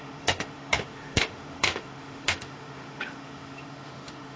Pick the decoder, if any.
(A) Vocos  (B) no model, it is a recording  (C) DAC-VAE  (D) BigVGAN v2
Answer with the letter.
C